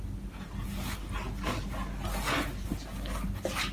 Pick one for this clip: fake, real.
real